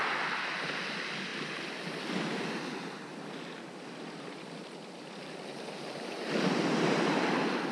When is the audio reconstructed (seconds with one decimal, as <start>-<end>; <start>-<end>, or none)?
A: 3.1-7.7